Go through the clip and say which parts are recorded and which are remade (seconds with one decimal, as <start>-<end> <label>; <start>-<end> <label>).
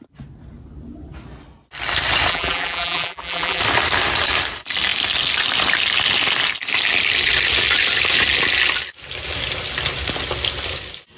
0.0-2.3 recorded; 2.3-3.6 remade; 3.6-11.2 recorded